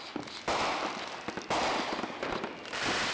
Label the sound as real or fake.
real